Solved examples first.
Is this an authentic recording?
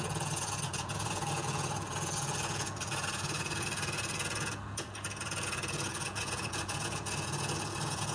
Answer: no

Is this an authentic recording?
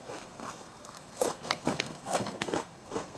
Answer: no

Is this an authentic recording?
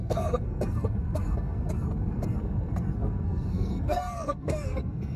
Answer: no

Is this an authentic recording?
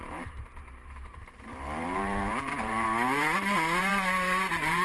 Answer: no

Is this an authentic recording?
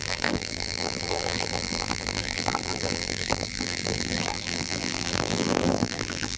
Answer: no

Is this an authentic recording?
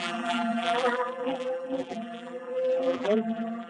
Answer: no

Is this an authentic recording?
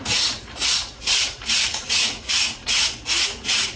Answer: no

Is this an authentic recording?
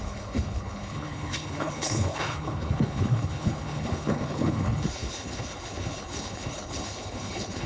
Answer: no